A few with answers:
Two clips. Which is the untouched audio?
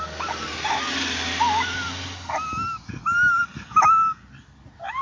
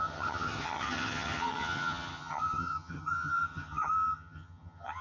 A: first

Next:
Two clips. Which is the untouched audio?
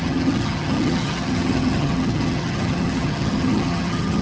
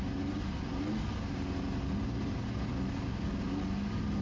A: second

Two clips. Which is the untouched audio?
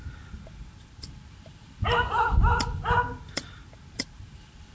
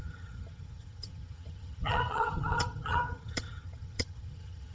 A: first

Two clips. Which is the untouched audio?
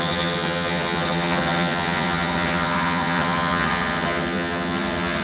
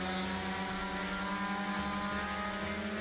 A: second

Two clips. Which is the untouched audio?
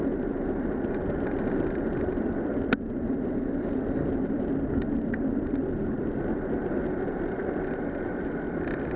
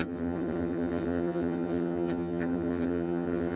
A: first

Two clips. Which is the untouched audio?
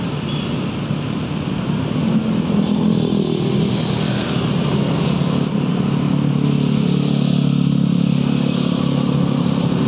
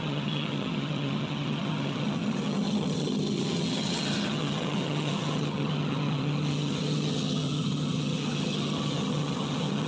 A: first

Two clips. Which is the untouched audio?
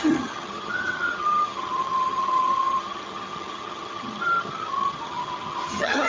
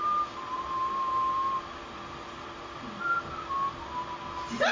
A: second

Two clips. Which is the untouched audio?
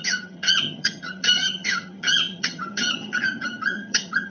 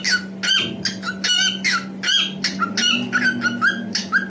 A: second